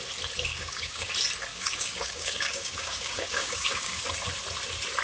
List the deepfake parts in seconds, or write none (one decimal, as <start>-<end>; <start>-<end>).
0.5-1.1; 1.5-4.0

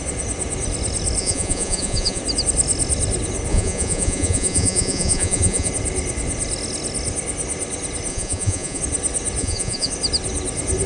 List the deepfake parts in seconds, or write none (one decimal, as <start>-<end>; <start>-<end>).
1.2-2.2; 3.5-5.7; 8.1-8.8; 9.4-9.9

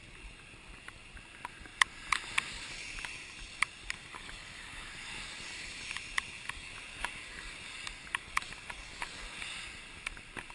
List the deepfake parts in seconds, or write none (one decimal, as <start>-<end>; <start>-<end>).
4.1-4.9

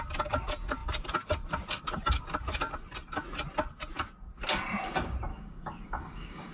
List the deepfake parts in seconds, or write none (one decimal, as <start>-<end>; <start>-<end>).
5.3-6.5

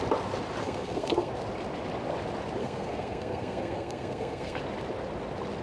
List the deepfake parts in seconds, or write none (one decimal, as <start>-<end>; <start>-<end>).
0.6-1.3; 2.6-4.6

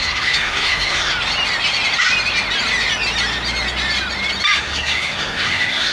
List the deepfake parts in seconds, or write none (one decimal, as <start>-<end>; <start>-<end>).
0.0-1.1; 4.6-5.9

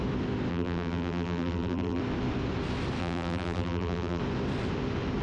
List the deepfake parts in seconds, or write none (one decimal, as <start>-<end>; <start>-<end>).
0.5-2.0; 3.0-4.2

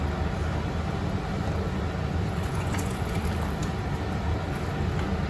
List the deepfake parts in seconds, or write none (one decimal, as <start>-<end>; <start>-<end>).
2.4-3.2